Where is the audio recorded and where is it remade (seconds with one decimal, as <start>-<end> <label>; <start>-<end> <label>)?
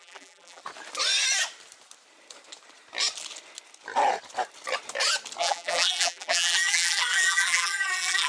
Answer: 0.0-0.6 remade; 0.6-5.4 recorded; 5.4-8.3 remade